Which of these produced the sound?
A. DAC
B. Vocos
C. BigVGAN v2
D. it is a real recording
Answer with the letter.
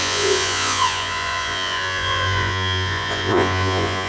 B